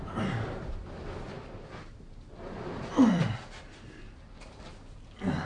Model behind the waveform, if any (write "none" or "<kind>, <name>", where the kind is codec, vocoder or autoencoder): none